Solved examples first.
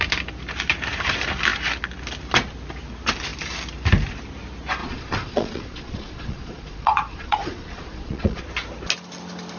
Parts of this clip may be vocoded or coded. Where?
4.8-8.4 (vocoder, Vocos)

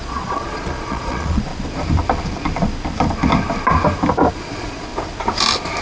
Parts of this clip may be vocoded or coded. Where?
0.0-1.5 (vocoder, Vocos); 4.3-4.9

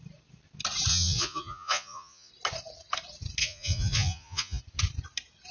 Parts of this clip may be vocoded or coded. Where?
0.9-2.3 (vocoder, Vocos); 3.4-4.6

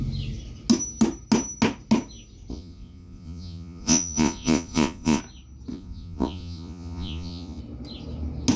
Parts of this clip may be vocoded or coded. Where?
2.5-5.2 (vocoder, Vocos); 5.7-7.6

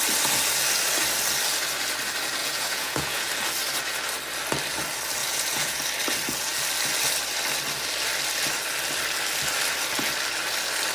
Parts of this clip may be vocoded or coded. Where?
2.4-3.3 (vocoder, Vocos); 5.2-5.8

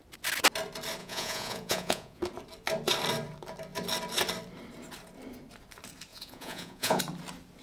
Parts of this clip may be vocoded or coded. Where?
1.0-2.2 (vocoder, Vocos); 6.1-7.0

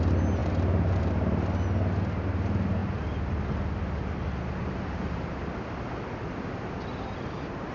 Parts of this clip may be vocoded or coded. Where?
none